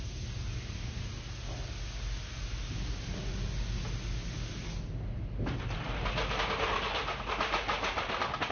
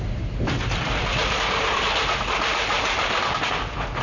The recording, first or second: first